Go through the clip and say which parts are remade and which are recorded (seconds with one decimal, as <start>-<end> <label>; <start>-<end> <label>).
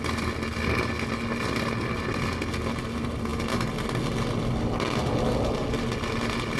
0.0-6.6 recorded